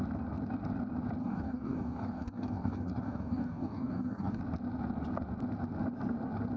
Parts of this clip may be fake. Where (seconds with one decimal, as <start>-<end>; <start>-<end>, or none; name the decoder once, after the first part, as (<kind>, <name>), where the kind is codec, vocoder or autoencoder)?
1.2-4.4 (codec, DAC)